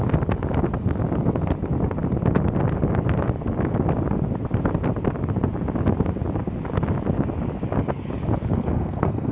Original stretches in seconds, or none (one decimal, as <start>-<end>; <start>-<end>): 0.0-8.5